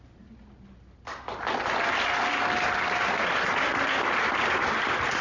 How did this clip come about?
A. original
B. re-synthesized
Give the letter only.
A